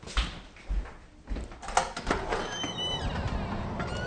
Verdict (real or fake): real